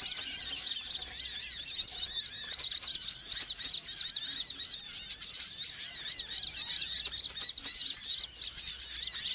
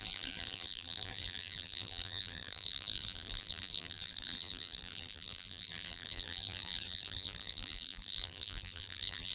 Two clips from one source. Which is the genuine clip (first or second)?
first